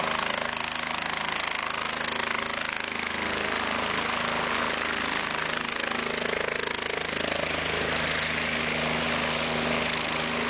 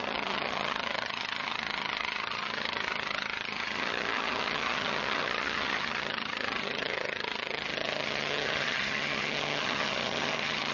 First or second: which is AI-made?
second